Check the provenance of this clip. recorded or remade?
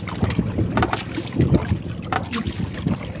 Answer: recorded